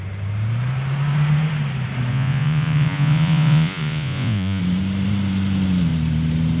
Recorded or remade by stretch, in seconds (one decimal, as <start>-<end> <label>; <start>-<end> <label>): 0.0-2.1 recorded; 2.1-4.6 remade; 4.6-6.6 recorded